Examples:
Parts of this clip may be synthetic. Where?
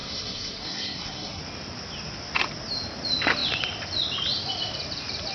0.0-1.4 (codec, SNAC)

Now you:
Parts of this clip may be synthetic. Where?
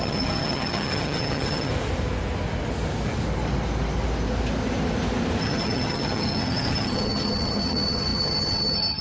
0.0-1.7 (vocoder, HiFi-GAN); 5.4-9.0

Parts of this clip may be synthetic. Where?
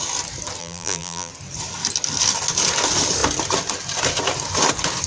0.6-1.3 (vocoder, BigVGAN v2)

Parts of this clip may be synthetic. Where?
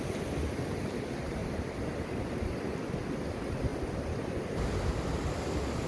none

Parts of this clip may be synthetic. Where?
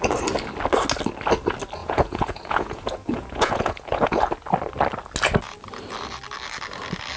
1.8-4.2 (vocoder, Vocos)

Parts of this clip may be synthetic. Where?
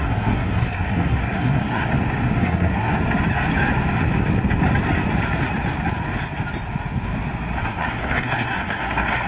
0.0-1.9 (codec, SNAC); 2.4-3.0; 7.6-9.3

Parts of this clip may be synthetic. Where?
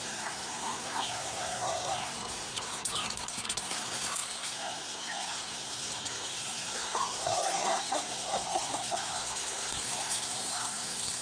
0.0-11.2 (codec, SNAC)